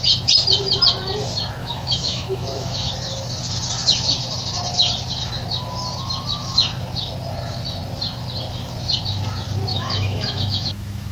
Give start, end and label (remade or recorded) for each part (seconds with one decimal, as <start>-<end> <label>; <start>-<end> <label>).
0.0-1.6 recorded; 1.6-2.9 remade; 2.9-9.7 recorded; 9.7-11.1 remade